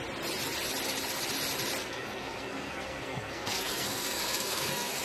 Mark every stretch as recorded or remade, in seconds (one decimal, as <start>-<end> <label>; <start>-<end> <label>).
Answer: 0.0-1.8 recorded; 1.8-5.0 remade